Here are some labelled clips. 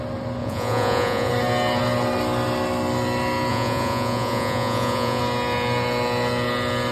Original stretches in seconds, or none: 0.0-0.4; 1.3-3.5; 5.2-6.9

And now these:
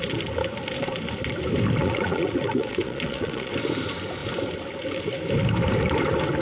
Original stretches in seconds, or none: 0.0-1.8; 3.5-6.4

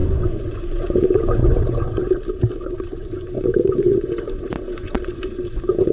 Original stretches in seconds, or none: 2.0-2.5

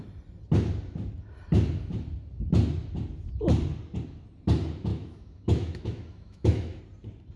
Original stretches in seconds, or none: 0.0-4.9; 6.8-7.4

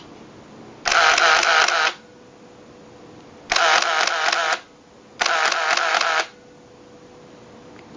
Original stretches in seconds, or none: 0.0-8.0

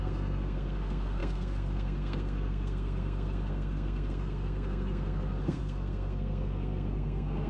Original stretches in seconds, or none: none